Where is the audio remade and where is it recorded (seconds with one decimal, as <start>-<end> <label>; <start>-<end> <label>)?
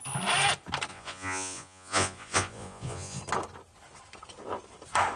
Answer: 0.0-0.9 recorded; 0.9-3.2 remade; 3.2-5.2 recorded